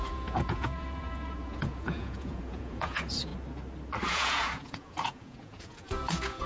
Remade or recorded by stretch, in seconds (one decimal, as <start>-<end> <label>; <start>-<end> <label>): 0.0-3.3 remade; 3.3-4.1 recorded; 4.1-6.5 remade

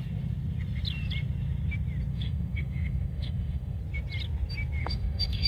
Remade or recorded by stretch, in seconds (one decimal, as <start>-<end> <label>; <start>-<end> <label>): 0.0-2.1 recorded; 2.1-3.8 remade; 3.8-4.8 recorded; 4.8-5.5 remade

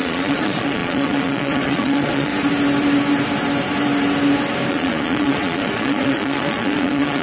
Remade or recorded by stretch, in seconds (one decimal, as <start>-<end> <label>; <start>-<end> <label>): 0.0-2.3 remade; 2.3-4.7 recorded; 4.7-7.2 remade

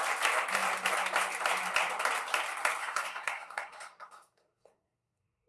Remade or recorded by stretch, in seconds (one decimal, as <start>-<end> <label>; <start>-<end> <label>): 0.0-2.8 recorded; 2.8-5.5 remade

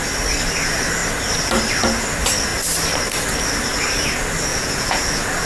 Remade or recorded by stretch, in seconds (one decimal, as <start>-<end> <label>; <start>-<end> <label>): 0.0-4.5 recorded; 4.5-5.5 remade

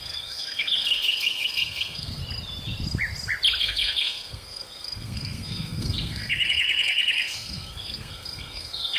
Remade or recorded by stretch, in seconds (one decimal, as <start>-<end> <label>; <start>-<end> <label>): 0.0-2.2 remade; 2.2-3.6 recorded; 3.6-9.0 remade

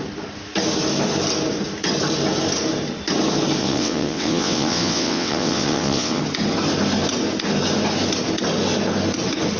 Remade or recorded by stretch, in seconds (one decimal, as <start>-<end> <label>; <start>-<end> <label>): 0.0-3.6 recorded; 3.6-6.2 remade; 6.2-9.6 recorded

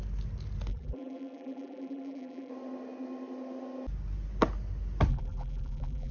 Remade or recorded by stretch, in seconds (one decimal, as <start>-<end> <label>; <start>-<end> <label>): 0.0-0.7 recorded; 0.7-2.5 remade; 2.5-5.1 recorded; 5.1-6.1 remade